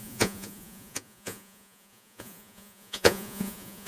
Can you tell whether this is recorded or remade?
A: remade